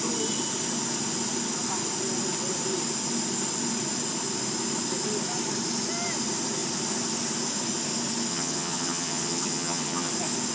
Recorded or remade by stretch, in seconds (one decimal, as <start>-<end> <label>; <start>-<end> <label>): 0.0-8.3 recorded; 8.3-10.1 remade; 10.1-10.5 recorded